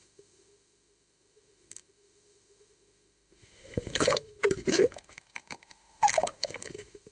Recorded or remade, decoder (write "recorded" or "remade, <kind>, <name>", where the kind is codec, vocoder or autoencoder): remade, autoencoder, DAC-VAE